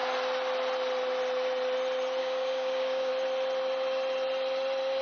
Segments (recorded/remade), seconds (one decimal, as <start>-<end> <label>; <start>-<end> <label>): 0.0-2.2 recorded; 2.2-3.1 remade; 3.1-5.0 recorded